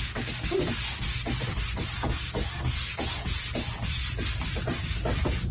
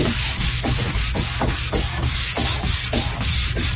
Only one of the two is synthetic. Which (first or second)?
second